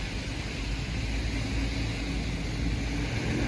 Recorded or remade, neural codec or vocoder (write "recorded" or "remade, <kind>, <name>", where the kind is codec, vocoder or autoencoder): recorded